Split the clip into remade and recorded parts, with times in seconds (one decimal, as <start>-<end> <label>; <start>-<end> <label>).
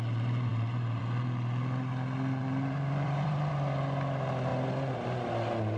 0.0-2.4 recorded; 2.4-3.5 remade; 3.5-5.8 recorded